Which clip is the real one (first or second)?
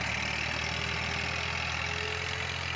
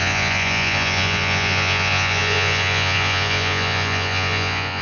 first